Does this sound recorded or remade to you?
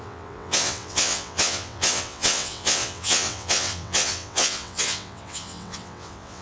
remade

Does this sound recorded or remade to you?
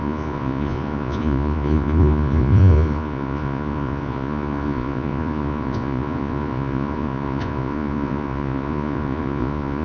remade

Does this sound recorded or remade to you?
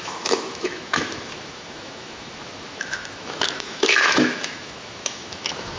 remade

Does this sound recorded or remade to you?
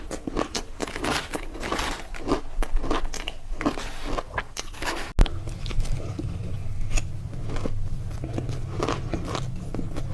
recorded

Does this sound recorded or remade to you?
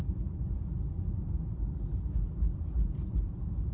recorded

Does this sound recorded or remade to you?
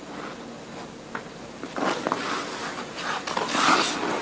recorded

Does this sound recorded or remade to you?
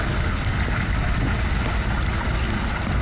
recorded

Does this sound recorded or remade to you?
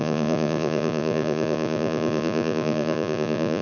remade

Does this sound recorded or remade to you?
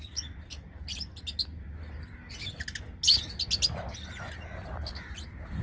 recorded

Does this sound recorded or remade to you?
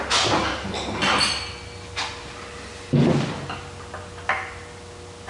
recorded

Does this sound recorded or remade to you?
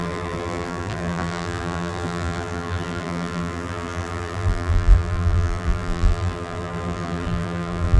remade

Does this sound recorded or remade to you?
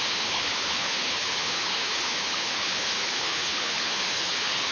remade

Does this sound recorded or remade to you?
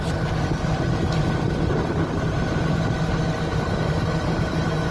recorded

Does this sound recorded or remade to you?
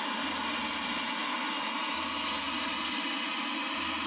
recorded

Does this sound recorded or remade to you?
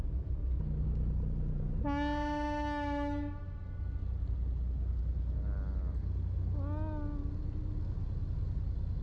recorded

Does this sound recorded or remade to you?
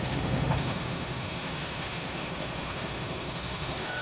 remade